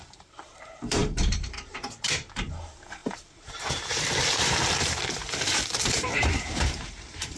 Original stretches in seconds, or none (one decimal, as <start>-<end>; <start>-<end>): none